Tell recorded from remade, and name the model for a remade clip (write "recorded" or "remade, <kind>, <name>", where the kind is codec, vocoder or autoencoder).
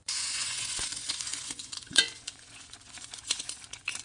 remade, vocoder, Vocos